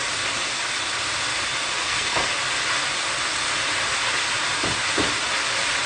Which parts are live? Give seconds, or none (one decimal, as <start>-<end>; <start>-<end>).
0.0-1.8; 2.3-5.9